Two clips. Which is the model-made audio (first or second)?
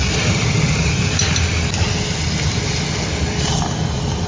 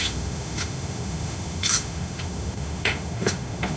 second